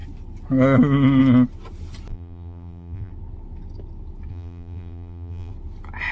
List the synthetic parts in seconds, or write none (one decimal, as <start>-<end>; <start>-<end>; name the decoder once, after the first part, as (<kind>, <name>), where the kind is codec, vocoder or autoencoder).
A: 2.1-3.1 (vocoder, BigVGAN v2); 4.3-5.5